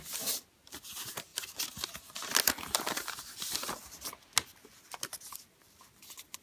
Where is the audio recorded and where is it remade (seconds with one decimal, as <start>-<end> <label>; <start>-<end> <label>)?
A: 0.0-6.4 recorded